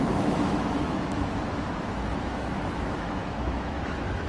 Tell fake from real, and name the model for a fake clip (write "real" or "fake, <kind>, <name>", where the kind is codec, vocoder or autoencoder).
fake, autoencoder, DAC-VAE